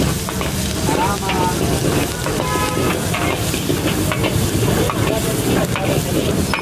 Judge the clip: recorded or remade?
recorded